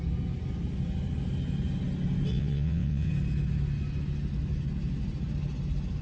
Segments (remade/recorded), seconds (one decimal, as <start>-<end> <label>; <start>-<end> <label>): 0.0-2.3 recorded; 2.3-3.1 remade; 3.1-6.0 recorded